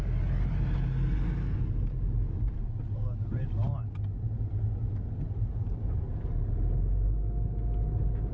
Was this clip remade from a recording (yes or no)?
no